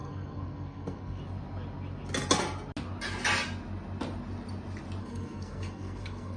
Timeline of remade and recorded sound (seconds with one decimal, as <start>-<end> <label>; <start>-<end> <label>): 0.0-1.2 remade; 1.2-5.0 recorded; 5.0-6.4 remade